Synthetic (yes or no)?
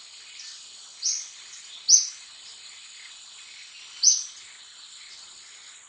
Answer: no